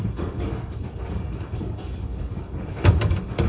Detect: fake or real fake